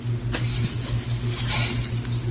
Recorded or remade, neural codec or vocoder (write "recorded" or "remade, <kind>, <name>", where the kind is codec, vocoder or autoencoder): recorded